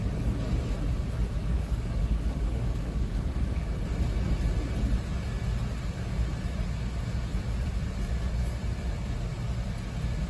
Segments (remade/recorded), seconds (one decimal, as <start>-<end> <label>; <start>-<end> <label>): 0.0-1.4 recorded; 1.4-3.7 remade; 3.7-10.3 recorded